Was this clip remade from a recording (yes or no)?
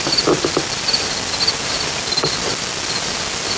no